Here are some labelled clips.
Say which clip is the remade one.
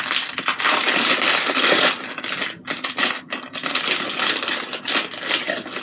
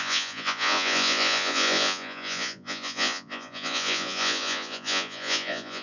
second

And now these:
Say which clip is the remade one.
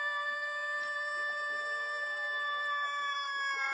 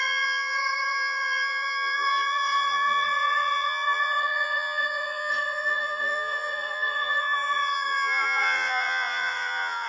second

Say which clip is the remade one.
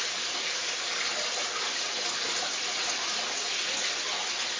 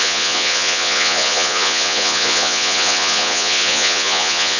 second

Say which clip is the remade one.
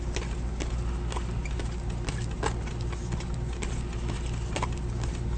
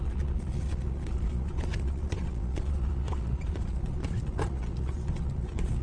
second